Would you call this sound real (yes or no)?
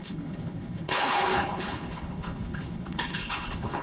no